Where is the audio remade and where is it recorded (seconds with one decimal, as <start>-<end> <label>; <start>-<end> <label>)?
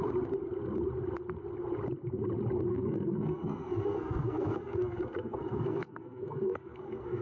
0.0-2.7 recorded; 2.7-7.2 remade